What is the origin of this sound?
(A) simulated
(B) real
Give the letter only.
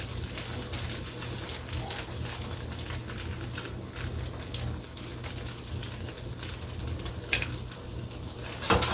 B